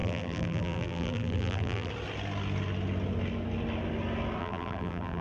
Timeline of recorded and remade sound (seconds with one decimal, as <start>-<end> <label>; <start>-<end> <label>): 0.0-1.9 remade; 1.9-4.4 recorded; 4.4-5.2 remade